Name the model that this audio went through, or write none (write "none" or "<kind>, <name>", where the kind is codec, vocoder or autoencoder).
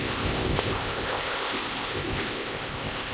codec, ZipCodec